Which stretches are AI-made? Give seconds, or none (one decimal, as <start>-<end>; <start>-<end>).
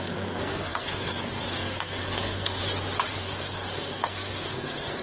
0.0-2.6; 3.1-5.0